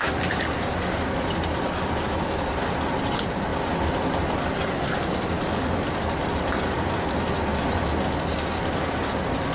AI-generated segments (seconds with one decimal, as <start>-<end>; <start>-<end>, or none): none

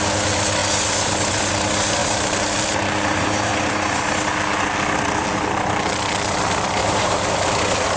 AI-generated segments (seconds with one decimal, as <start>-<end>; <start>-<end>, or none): 2.0-3.5; 6.8-7.3

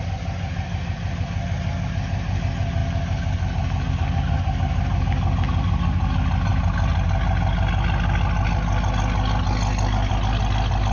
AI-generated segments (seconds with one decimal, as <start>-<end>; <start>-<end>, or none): none

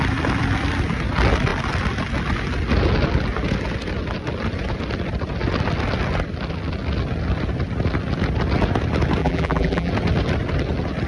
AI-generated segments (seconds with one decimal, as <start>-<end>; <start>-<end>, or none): 9.2-9.9